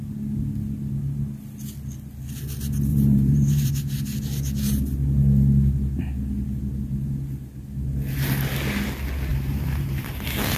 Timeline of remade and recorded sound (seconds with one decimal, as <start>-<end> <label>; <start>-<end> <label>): 0.0-2.9 recorded; 2.9-3.7 remade; 3.7-9.3 recorded; 9.3-10.1 remade; 10.1-10.6 recorded

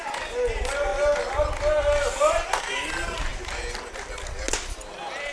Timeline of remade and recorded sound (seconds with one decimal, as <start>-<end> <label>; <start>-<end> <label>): 0.0-5.3 recorded

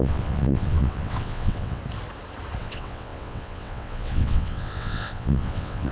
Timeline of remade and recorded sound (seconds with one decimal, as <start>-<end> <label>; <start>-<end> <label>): 0.0-1.8 remade; 1.8-2.6 recorded; 2.6-5.9 remade

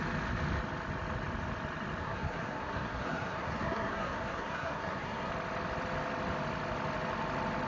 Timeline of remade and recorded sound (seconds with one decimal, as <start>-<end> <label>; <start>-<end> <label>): 0.0-2.0 recorded; 2.0-5.3 remade; 5.3-7.7 recorded

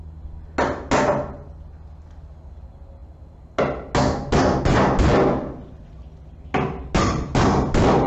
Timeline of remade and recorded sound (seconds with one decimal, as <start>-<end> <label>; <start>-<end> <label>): 0.0-8.1 recorded